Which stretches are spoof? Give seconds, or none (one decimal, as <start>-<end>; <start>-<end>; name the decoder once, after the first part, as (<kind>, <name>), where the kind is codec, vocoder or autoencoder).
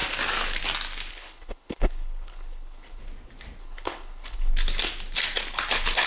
1.1-3.0 (codec, HILCodec); 3.6-4.5